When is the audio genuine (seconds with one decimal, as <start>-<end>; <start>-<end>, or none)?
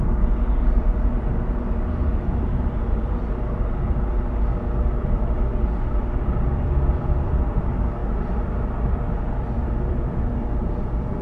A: 0.9-5.1